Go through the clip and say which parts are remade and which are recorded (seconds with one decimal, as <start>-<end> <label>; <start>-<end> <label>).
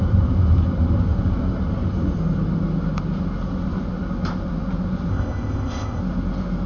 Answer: 0.0-5.1 recorded; 5.1-6.0 remade; 6.0-6.7 recorded